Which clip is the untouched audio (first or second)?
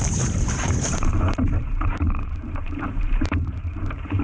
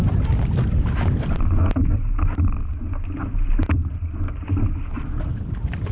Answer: second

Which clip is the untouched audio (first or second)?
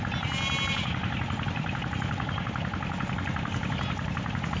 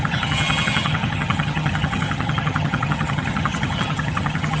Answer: first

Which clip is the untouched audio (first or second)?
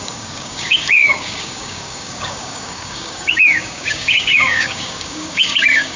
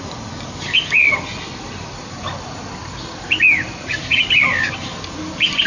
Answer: second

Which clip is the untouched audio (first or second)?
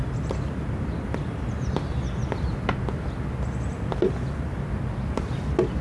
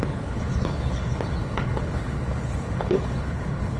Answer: first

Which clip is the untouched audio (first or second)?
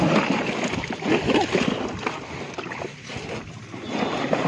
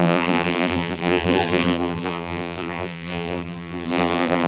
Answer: first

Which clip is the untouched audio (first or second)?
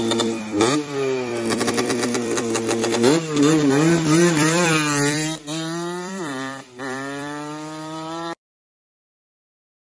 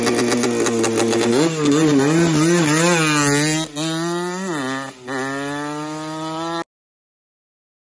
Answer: second